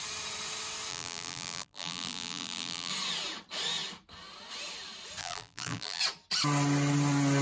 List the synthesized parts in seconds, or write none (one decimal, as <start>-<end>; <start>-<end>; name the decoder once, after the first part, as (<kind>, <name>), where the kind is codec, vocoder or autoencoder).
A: 0.9-2.9 (vocoder, BigVGAN v2); 5.2-6.0